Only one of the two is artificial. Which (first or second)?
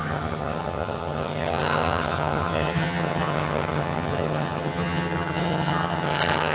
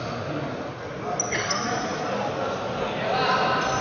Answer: first